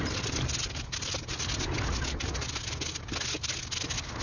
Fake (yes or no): no